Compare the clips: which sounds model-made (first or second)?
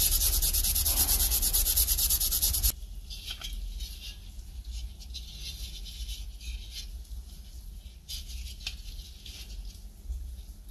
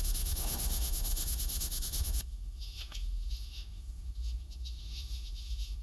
second